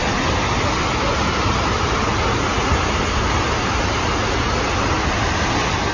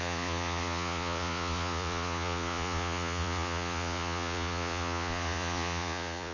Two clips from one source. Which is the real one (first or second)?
first